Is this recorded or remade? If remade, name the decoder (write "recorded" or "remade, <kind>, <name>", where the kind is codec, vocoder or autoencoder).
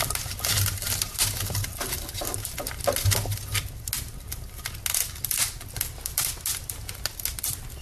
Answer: recorded